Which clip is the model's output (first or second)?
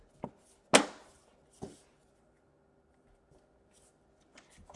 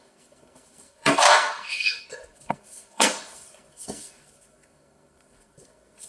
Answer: second